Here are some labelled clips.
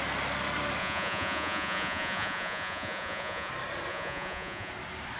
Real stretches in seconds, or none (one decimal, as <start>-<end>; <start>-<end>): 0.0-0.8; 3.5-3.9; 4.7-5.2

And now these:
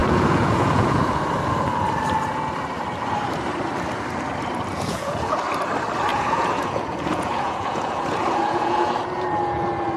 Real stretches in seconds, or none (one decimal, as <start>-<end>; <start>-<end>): 1.2-4.7; 5.4-6.1; 8.9-10.0

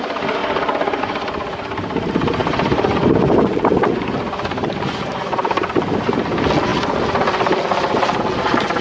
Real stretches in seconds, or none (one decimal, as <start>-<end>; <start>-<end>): 0.0-2.4; 3.7-6.7; 8.2-8.8

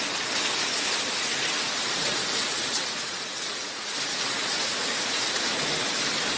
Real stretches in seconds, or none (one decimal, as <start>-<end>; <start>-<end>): 0.0-1.8; 5.6-6.4

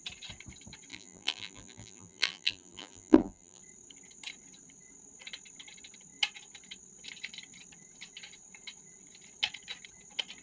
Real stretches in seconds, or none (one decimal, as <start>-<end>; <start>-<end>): 0.0-0.9; 3.6-10.4